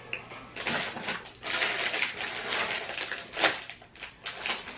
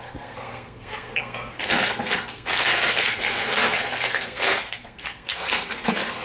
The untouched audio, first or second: first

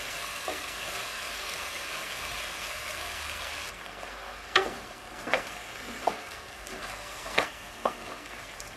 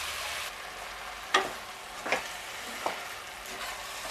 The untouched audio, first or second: second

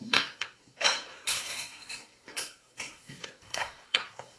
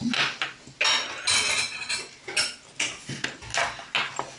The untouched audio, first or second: second